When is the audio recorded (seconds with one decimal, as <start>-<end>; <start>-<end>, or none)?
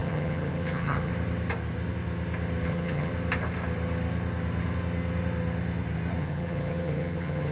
1.1-2.7; 3.1-6.2